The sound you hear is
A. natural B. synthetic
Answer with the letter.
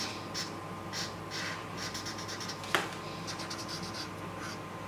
A